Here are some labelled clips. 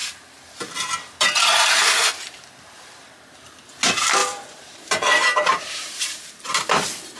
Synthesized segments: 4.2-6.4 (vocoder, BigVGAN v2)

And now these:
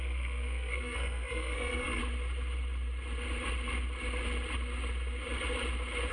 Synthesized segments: 0.0-2.0 (codec, SNAC)

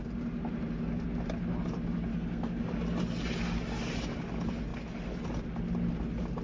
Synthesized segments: 2.1-2.6 (codec, SNAC)

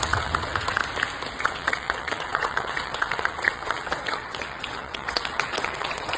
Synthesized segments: 0.0-0.8 (vocoder, WaveNeXt); 1.4-6.2

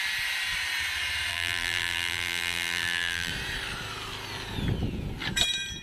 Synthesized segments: 1.3-3.3 (vocoder, BigVGAN v2)

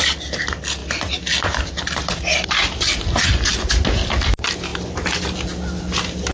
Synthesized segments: none